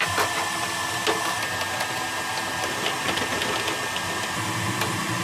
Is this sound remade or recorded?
recorded